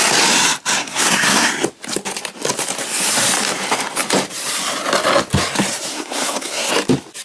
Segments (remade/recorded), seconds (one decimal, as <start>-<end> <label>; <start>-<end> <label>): 0.0-0.8 recorded; 0.8-1.5 remade; 1.5-5.9 recorded; 5.9-6.7 remade; 6.7-7.2 recorded